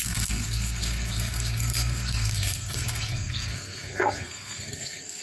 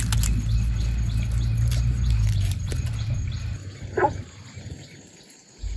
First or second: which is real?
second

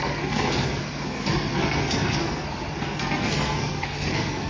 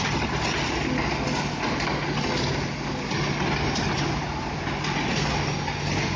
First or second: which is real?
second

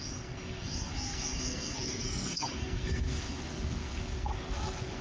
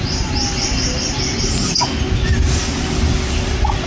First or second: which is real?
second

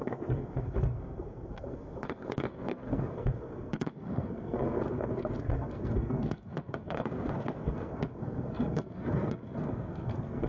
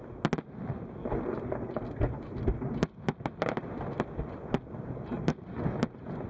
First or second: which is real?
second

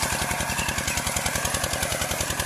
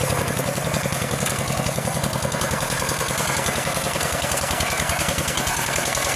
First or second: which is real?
first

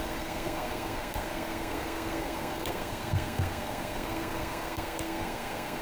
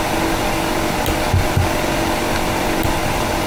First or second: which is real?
second